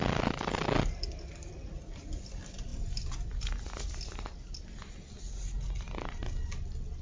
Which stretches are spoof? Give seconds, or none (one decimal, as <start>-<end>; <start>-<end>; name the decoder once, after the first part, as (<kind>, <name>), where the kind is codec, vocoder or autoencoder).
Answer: none